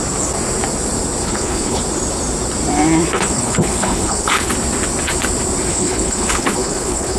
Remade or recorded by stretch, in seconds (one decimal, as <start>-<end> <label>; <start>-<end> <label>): 0.0-1.2 recorded; 1.2-1.8 remade; 1.8-3.1 recorded; 3.1-4.5 remade; 4.5-5.7 recorded; 5.7-7.2 remade